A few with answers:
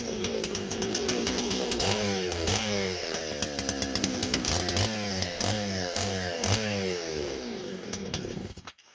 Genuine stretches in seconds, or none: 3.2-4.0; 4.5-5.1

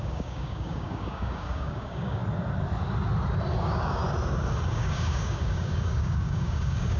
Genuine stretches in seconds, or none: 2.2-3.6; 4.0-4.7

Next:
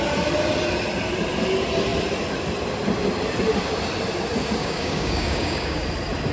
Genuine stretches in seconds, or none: 0.0-4.6; 5.8-6.3